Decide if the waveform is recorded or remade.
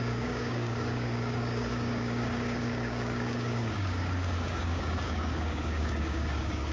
remade